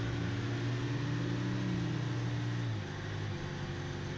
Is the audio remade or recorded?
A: recorded